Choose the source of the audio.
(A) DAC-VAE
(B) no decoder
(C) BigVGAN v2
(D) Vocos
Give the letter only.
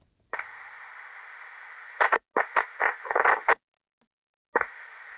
B